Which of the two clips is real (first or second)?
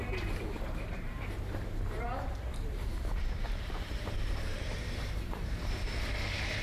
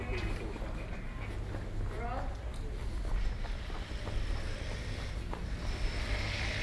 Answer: second